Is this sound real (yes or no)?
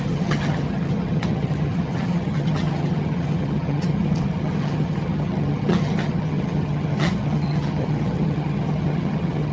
no